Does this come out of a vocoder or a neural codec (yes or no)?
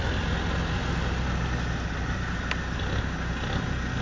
no